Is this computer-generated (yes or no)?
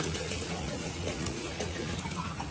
yes